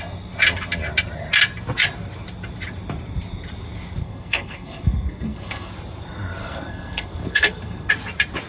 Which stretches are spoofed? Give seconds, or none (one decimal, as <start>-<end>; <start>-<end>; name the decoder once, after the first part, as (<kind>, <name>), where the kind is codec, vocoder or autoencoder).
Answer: 4.0-5.7 (codec, SNAC); 6.4-7.9